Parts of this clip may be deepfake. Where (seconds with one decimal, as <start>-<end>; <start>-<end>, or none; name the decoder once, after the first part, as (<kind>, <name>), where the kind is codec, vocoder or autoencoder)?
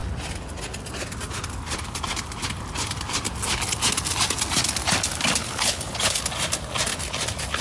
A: 5.4-6.2 (codec, HILCodec)